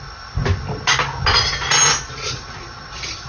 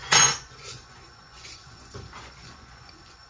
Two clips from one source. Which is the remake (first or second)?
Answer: second